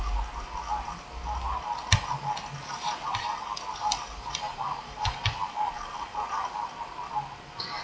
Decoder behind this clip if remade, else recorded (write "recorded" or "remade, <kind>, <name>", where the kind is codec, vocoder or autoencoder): recorded